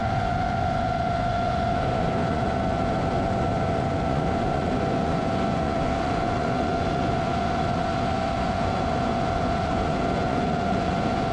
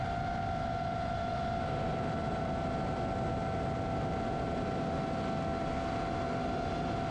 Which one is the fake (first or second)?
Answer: first